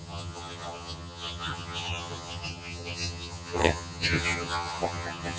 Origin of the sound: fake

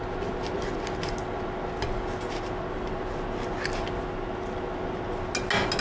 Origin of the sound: real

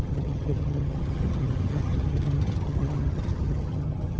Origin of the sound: fake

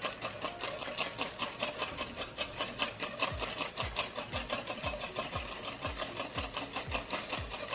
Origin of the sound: real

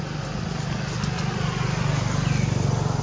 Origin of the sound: real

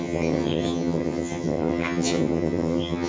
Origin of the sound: fake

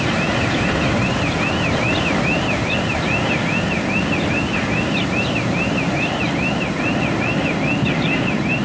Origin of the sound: real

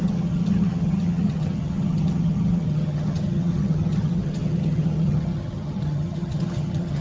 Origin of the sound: fake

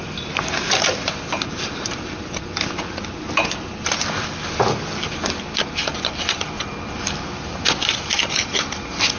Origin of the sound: real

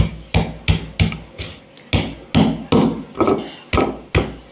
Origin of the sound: real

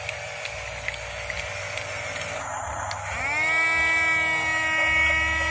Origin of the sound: real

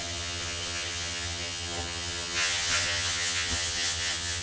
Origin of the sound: fake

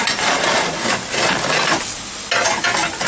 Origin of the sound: real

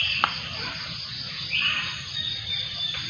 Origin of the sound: real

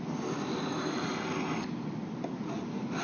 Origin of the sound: real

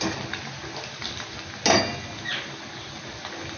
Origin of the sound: real